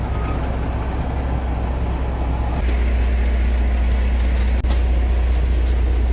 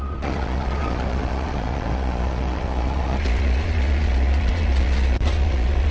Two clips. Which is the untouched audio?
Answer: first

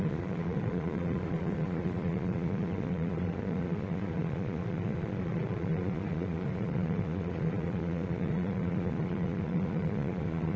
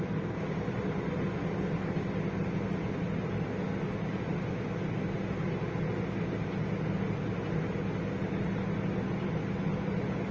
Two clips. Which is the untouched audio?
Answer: second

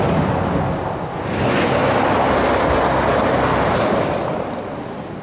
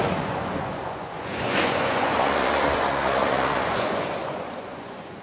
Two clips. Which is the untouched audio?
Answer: first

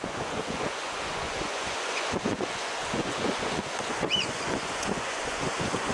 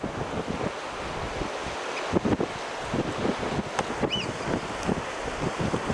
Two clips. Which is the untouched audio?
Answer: second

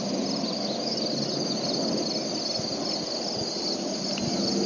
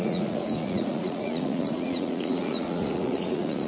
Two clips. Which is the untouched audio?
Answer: first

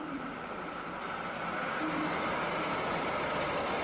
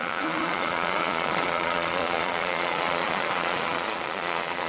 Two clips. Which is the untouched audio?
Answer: first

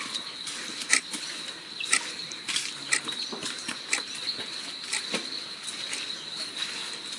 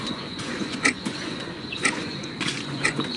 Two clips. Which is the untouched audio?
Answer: first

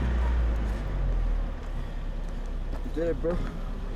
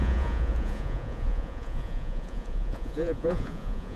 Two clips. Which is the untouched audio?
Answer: first